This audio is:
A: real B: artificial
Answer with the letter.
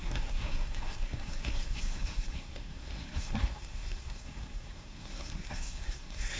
B